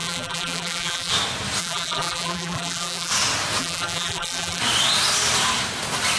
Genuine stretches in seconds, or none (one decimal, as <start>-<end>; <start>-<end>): 1.1-1.6; 3.1-3.6; 4.6-6.2